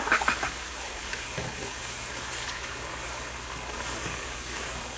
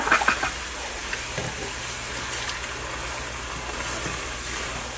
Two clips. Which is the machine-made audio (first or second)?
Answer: first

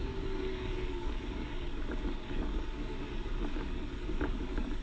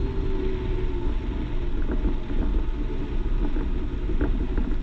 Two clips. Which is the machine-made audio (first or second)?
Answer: first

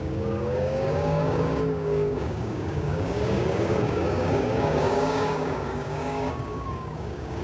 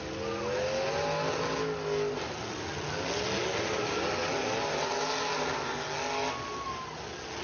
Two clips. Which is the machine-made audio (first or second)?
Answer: first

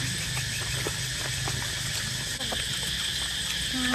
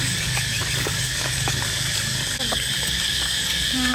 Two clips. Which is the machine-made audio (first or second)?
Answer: second